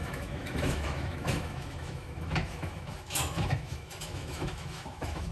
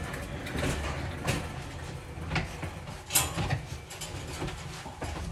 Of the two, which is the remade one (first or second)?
first